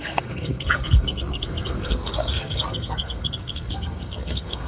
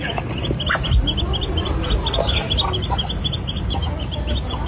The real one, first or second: second